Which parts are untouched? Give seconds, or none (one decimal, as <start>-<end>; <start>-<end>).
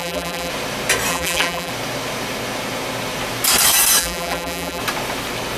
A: 0.5-1.1; 1.7-4.0; 4.8-5.6